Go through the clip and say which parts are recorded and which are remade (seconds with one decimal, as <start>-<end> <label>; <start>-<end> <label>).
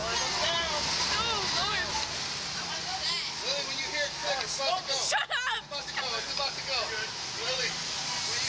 0.0-8.5 recorded